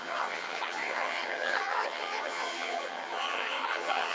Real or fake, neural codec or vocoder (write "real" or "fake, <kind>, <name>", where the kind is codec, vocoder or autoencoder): fake, vocoder, HiFi-GAN